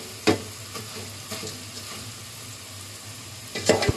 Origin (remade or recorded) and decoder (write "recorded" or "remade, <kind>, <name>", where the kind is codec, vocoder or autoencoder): recorded